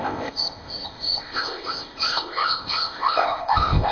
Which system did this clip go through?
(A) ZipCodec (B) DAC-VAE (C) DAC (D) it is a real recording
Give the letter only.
A